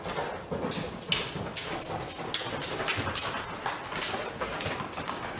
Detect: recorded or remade recorded